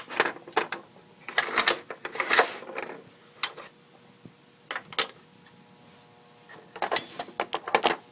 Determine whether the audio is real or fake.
real